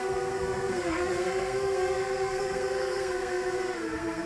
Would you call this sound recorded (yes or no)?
no